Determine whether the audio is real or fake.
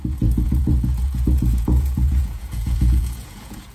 fake